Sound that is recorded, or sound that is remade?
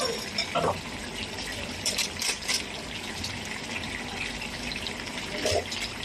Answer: recorded